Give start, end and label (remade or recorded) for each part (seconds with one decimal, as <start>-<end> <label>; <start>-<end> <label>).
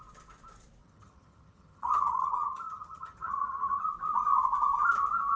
0.0-0.8 recorded; 0.8-3.8 remade; 3.8-5.4 recorded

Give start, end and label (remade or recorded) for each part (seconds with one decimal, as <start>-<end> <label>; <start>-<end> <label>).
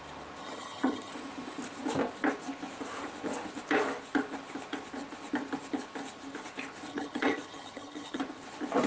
0.0-0.4 recorded; 0.4-1.1 remade; 1.1-6.9 recorded; 6.9-8.2 remade; 8.2-8.9 recorded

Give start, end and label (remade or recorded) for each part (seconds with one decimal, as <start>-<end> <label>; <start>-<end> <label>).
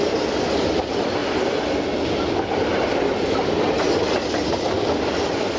0.0-5.6 recorded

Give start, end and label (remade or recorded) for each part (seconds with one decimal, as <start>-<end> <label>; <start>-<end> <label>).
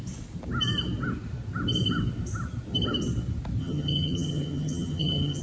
0.0-3.6 recorded; 3.6-5.4 remade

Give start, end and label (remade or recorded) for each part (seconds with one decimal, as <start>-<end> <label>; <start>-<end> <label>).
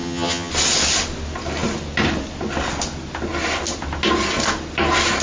0.0-0.5 remade; 0.5-5.2 recorded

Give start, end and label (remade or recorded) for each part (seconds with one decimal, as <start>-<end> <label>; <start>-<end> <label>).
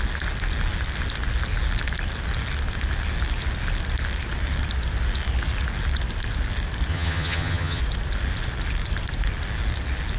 0.0-6.9 recorded; 6.9-7.8 remade; 7.8-10.2 recorded